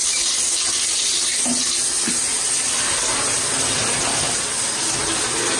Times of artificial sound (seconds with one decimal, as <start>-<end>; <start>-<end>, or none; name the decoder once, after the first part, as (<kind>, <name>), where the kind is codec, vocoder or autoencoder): none